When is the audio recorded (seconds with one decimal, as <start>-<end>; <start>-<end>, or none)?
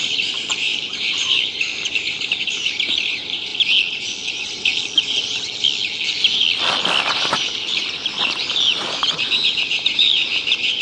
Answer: 3.5-4.3; 4.7-7.0